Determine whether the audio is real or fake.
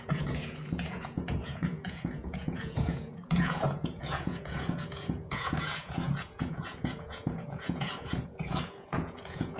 fake